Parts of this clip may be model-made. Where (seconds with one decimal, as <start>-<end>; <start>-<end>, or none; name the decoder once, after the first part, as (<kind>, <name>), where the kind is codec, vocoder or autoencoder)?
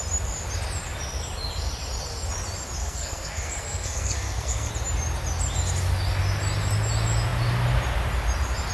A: 2.8-4.7 (codec, SNAC)